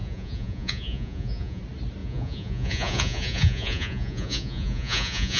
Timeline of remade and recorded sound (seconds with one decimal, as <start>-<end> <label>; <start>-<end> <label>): 0.0-1.6 remade; 1.6-2.0 recorded; 2.0-5.4 remade